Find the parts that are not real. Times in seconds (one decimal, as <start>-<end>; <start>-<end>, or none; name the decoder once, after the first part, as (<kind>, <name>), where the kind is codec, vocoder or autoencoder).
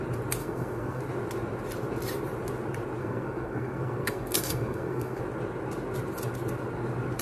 0.4-1.0 (codec, SNAC); 3.0-5.2